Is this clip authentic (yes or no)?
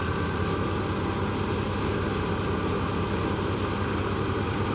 yes